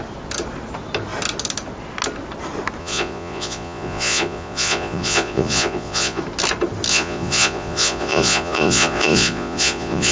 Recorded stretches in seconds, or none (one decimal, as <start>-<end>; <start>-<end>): 0.0-2.8; 6.2-6.9